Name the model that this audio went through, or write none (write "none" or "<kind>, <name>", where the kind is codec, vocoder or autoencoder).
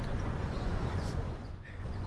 vocoder, Vocos